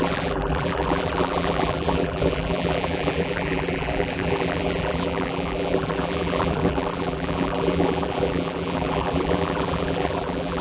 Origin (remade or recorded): remade